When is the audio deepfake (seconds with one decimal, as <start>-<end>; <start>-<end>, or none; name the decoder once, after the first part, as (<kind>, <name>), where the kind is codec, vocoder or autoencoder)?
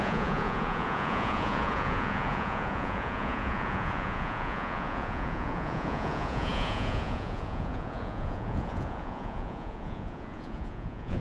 0.0-11.2 (vocoder, Vocos)